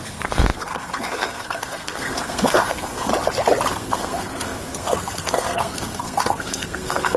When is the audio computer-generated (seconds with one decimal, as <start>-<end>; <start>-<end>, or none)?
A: 0.0-3.1; 3.7-7.2